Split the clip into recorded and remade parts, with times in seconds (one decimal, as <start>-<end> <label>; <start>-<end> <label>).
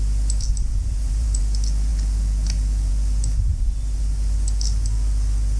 0.0-0.8 recorded; 0.8-1.4 remade; 1.4-5.6 recorded